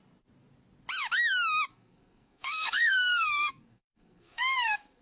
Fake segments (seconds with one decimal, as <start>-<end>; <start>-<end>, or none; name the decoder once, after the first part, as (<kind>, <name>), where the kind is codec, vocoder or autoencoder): 1.7-5.0 (codec, SNAC)